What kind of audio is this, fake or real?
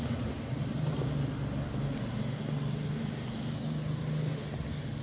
real